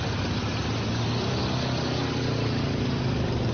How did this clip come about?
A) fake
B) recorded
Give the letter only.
B